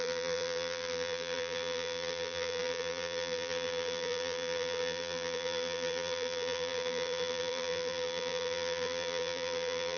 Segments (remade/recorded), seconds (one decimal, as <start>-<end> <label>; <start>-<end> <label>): 0.0-10.0 remade